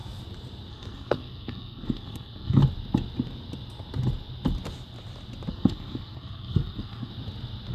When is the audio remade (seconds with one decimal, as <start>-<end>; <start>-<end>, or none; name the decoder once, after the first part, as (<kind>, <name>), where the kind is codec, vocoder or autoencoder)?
0.7-2.6 (codec, SNAC); 5.5-7.1